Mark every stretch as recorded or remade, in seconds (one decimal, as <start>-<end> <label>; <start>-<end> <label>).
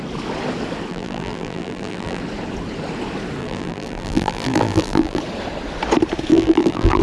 0.0-0.9 recorded; 0.9-2.2 remade; 2.2-3.4 recorded; 3.4-5.2 remade; 5.2-6.3 recorded; 6.3-7.0 remade